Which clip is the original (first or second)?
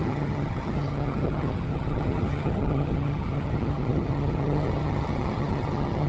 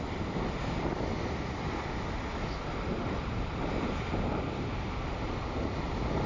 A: second